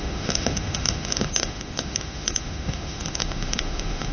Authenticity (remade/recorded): remade